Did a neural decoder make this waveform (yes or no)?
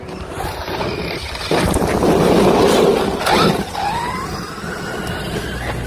no